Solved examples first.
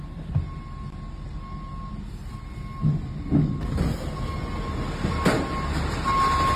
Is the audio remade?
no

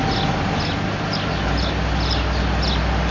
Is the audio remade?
no